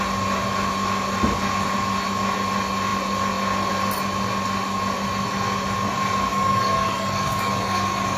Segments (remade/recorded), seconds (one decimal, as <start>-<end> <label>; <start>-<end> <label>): 0.0-6.3 recorded; 6.3-8.2 remade